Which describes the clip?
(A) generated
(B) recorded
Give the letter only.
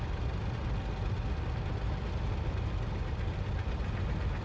B